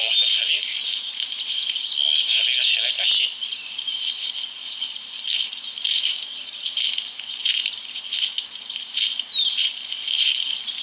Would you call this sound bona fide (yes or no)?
yes